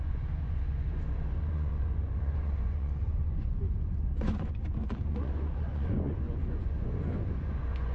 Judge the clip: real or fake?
fake